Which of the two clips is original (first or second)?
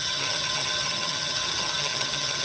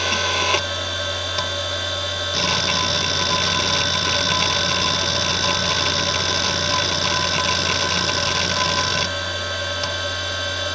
second